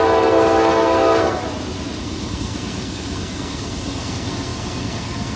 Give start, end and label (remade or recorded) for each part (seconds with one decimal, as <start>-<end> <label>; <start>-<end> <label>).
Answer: 0.0-1.4 remade; 1.4-2.0 recorded; 2.0-5.4 remade